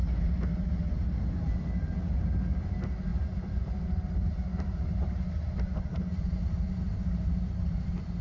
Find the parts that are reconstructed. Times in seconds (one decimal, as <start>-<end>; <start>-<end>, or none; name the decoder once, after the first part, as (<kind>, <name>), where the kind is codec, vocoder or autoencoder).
0.0-0.7 (vocoder, BigVGAN v2); 3.1-8.2